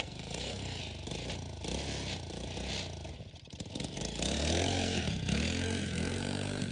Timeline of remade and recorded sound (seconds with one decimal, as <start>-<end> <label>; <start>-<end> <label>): 0.0-0.8 remade; 0.8-3.7 recorded; 3.7-6.7 remade